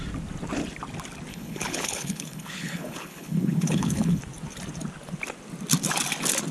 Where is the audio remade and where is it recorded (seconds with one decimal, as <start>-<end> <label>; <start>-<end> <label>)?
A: 0.0-1.3 recorded; 1.3-4.2 remade; 4.2-6.5 recorded